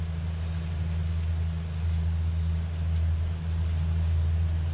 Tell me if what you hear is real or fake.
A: real